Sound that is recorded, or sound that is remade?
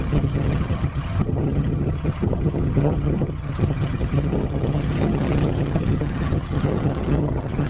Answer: remade